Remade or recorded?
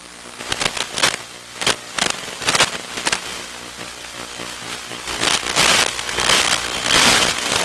recorded